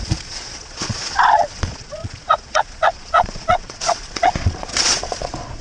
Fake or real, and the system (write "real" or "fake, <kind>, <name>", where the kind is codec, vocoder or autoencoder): fake, vocoder, Vocos